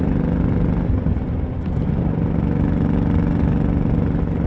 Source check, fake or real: real